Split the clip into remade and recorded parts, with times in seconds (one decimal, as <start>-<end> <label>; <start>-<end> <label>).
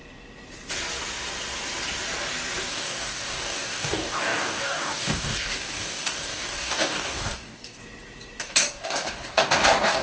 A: 0.0-2.7 recorded; 2.7-7.8 remade; 7.8-8.4 recorded; 8.4-10.0 remade